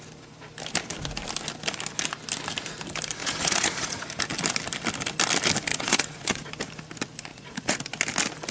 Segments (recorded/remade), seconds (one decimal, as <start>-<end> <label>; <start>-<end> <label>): 0.0-3.2 recorded; 3.2-4.2 remade; 4.2-5.7 recorded; 5.7-6.5 remade; 6.5-7.3 recorded; 7.3-7.9 remade; 7.9-8.5 recorded